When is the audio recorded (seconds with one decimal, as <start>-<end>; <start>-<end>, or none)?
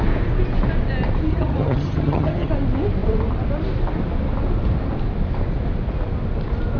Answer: 0.0-1.3; 2.5-6.8